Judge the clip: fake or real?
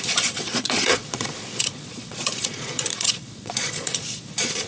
fake